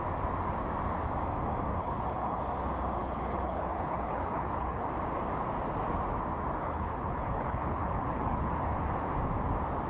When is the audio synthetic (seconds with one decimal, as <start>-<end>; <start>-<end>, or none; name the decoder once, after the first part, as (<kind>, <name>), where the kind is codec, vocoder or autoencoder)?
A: 1.8-2.4 (codec, HILCodec); 3.0-4.9; 6.6-8.5